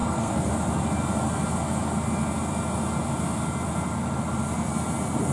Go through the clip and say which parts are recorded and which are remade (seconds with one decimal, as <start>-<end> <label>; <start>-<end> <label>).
0.0-0.5 remade; 0.5-5.3 recorded